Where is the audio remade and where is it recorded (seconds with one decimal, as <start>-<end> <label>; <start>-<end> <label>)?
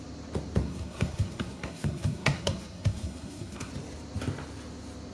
0.0-0.6 recorded; 0.6-3.7 remade; 3.7-5.1 recorded